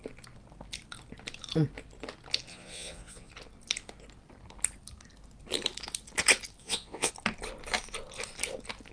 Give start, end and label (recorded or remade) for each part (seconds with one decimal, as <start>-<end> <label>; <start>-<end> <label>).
0.0-2.5 recorded; 2.5-3.3 remade; 3.3-6.6 recorded; 6.6-7.1 remade; 7.1-8.9 recorded